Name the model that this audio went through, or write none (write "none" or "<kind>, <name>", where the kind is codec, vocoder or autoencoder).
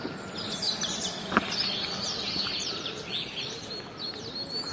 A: none